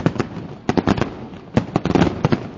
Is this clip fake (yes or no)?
no